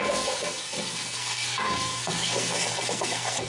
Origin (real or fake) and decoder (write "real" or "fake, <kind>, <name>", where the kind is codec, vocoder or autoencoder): fake, codec, SNAC